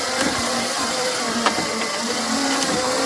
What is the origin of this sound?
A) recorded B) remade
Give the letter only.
B